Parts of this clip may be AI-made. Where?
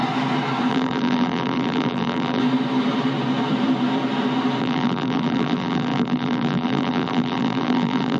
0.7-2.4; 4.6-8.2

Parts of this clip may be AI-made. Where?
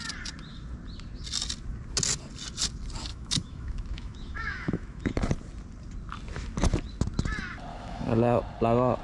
3.1-5.1; 7.7-8.4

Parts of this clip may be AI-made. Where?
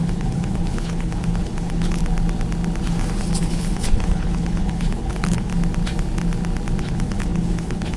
0.0-2.0; 3.4-5.5; 6.8-8.0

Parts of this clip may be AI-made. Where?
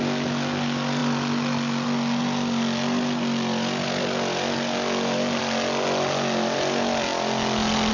none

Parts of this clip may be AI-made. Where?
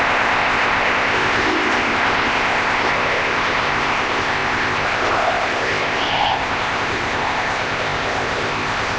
0.0-9.0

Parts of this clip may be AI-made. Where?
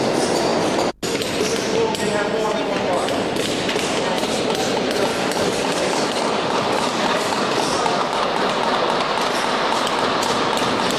5.1-8.2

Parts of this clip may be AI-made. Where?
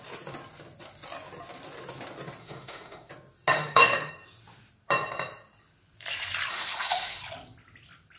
2.4-3.1; 3.5-4.1; 6.5-7.2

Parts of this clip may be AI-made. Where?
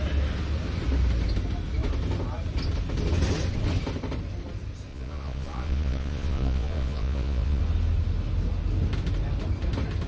4.9-7.6